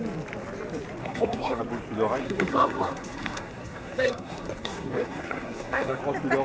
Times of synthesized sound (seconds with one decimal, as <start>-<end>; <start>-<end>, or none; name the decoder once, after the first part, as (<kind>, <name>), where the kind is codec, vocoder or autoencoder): 1.0-1.6 (codec, SNAC); 2.2-6.0